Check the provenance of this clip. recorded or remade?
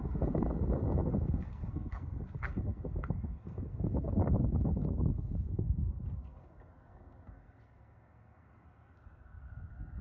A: remade